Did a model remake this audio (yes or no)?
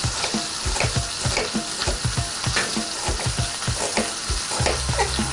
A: no